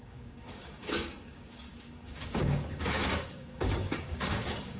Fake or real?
fake